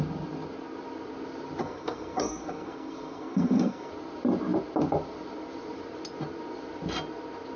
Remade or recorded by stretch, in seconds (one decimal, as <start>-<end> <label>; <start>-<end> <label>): 0.0-1.6 recorded; 1.6-3.9 remade; 3.9-7.6 recorded